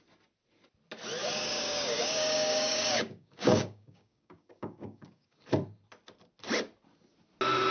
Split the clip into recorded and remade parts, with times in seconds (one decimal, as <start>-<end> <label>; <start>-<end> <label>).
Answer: 0.0-1.2 recorded; 1.2-5.4 remade; 5.4-7.7 recorded